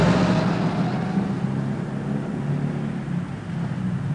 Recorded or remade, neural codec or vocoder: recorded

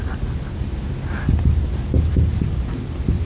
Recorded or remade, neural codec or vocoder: recorded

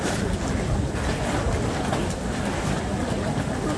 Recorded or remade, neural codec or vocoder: recorded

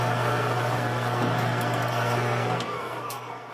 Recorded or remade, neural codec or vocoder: remade, codec, SNAC